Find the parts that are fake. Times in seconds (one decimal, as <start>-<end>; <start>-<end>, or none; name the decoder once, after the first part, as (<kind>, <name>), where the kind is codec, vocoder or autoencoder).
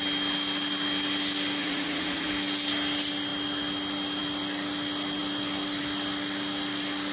1.6-2.3 (vocoder, Vocos)